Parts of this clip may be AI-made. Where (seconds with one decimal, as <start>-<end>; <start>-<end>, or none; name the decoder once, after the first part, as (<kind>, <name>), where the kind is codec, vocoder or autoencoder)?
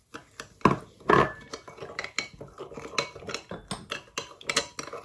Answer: none